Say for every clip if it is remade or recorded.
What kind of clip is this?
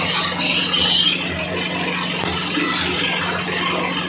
recorded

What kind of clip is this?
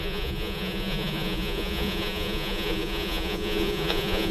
remade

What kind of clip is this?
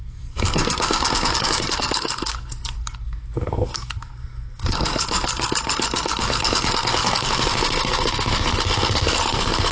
remade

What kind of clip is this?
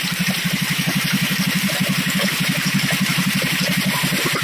remade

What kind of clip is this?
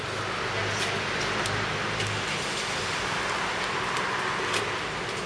recorded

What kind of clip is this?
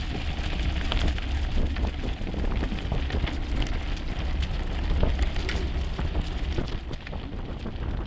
recorded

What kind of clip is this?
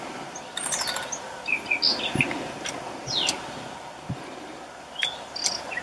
recorded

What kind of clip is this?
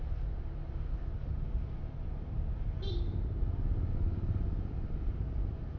recorded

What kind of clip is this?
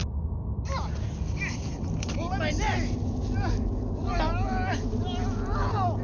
recorded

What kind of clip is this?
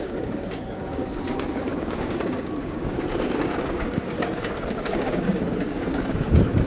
remade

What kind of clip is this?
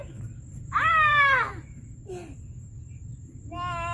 recorded